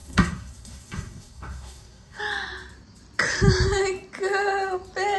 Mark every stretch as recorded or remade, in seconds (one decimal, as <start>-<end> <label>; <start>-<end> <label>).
0.0-2.2 remade; 2.2-5.2 recorded